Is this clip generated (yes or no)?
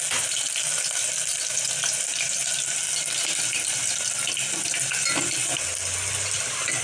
no